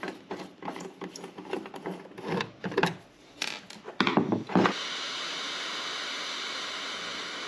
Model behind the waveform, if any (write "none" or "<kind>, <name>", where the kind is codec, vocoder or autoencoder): none